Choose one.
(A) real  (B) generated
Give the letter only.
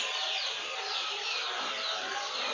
A